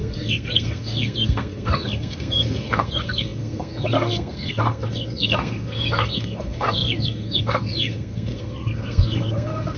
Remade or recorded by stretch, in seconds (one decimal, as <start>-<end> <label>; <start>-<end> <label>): 0.0-9.8 remade